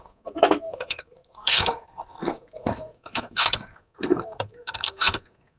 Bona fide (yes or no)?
no